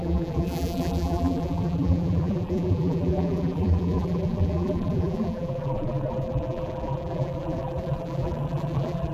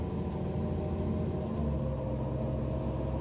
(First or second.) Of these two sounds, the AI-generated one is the first